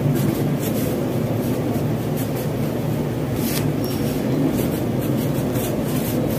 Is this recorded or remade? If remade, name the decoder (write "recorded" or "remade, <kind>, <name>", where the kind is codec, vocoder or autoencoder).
recorded